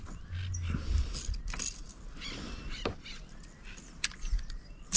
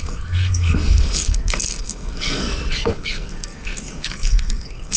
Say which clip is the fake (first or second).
second